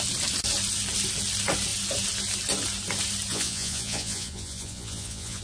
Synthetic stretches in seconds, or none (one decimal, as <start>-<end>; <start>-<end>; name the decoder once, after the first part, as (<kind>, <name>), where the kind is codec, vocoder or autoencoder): 3.3-5.4 (vocoder, Vocos)